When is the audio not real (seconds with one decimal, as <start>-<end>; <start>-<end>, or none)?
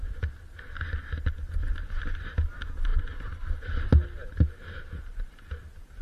none